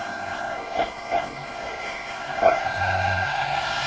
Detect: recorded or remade remade